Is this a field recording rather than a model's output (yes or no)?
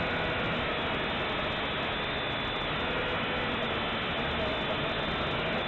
yes